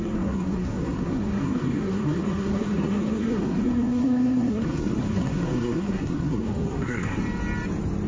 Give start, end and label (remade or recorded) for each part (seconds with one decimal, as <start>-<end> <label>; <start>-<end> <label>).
0.0-7.2 remade; 7.2-8.1 recorded